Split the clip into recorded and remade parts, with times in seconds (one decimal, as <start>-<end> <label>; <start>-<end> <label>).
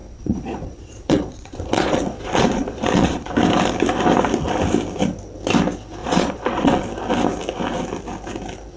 0.0-3.3 remade; 3.3-6.0 recorded; 6.0-6.8 remade; 6.8-8.8 recorded